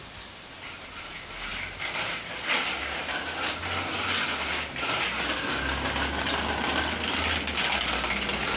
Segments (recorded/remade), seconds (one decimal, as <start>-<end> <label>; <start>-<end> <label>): 0.0-8.6 recorded